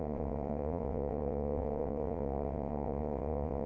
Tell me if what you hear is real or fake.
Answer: fake